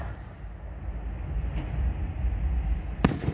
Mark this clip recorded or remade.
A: recorded